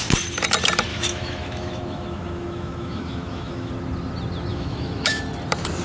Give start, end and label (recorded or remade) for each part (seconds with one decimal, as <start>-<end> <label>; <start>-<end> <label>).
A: 0.0-0.9 recorded; 0.9-3.7 remade; 3.7-4.5 recorded; 4.5-5.2 remade; 5.2-5.8 recorded